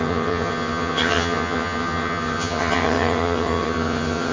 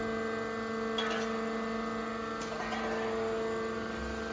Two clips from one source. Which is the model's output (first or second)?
first